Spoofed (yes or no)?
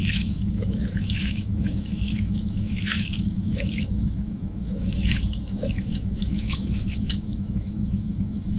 yes